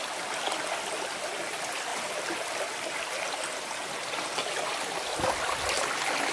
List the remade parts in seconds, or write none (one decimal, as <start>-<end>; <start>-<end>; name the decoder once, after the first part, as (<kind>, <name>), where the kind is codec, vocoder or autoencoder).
none